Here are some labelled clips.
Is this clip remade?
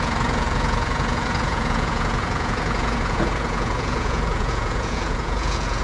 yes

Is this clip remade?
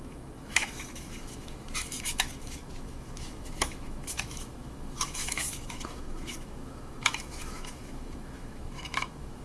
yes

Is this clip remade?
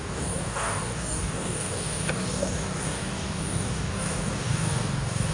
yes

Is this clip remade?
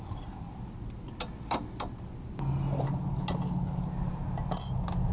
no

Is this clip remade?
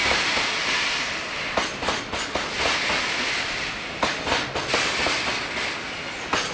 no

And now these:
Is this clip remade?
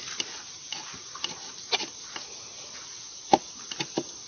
no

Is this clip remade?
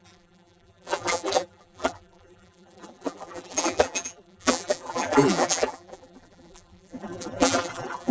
yes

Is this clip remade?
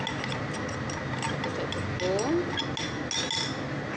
no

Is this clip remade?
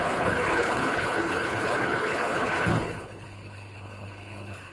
yes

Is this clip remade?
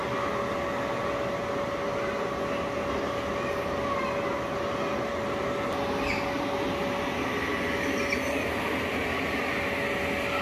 no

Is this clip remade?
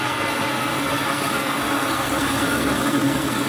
yes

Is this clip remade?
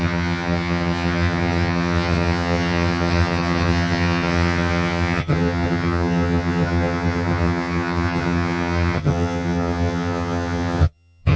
yes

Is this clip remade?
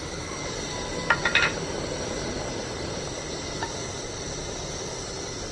no